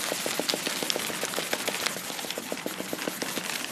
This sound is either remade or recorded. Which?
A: recorded